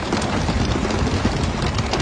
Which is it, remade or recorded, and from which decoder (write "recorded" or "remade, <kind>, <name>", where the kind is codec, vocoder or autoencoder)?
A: recorded